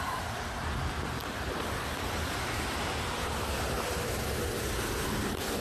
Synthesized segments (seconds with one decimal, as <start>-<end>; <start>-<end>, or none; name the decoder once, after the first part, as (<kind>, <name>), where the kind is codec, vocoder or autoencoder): 1.2-4.6 (vocoder, BigVGAN v2)